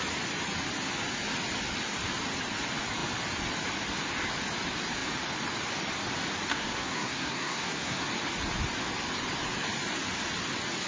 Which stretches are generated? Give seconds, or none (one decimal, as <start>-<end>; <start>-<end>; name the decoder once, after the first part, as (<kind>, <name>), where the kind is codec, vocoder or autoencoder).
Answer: 6.5-8.0 (codec, SNAC)